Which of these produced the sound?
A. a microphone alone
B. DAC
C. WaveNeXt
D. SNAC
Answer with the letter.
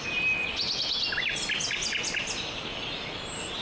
A